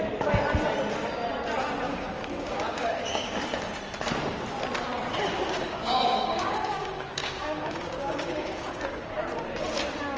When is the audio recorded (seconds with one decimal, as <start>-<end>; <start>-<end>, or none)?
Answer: 0.0-1.9; 3.4-5.3; 9.1-10.2